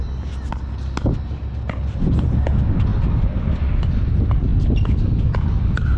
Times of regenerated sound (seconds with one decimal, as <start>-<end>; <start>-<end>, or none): none